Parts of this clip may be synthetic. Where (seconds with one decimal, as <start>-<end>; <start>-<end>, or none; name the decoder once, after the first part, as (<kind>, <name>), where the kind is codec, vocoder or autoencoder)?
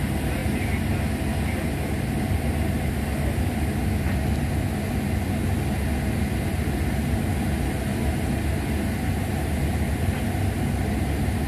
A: none